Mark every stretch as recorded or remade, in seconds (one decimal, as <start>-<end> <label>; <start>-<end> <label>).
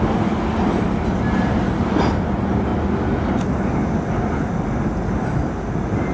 0.0-6.1 recorded